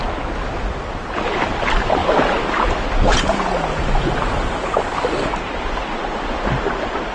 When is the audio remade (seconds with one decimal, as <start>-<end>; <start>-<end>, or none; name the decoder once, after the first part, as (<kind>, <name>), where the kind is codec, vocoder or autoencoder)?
none